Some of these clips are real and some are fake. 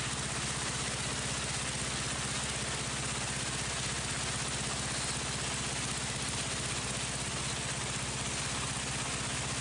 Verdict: real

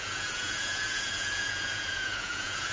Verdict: fake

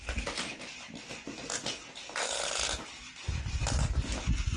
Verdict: real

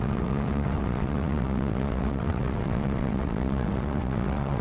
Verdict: fake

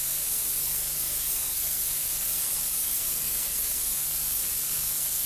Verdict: fake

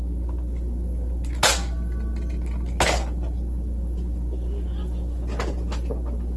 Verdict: real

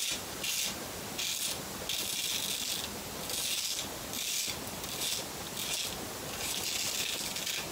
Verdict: real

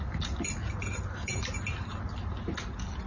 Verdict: real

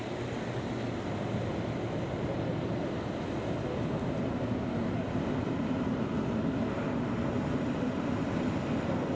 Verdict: real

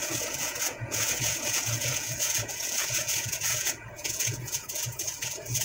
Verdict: fake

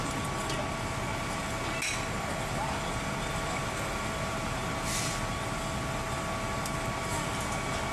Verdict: real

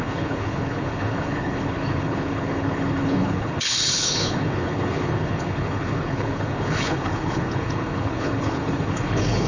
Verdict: fake